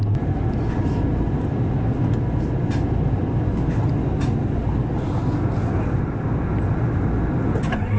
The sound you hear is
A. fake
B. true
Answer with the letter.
B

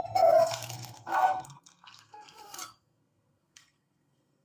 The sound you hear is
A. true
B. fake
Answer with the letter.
B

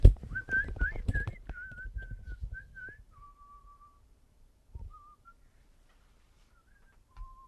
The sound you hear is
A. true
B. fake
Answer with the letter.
B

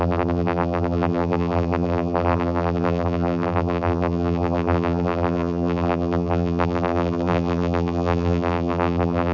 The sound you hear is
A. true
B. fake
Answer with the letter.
B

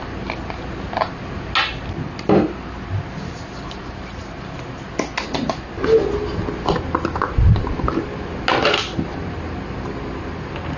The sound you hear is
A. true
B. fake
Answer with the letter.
A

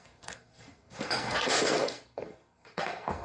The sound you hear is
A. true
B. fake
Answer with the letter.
B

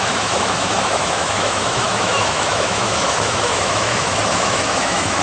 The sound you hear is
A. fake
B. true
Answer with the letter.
A